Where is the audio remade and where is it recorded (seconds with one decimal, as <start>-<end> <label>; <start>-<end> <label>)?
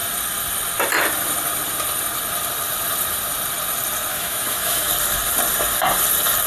0.0-4.1 recorded; 4.1-4.9 remade; 4.9-6.5 recorded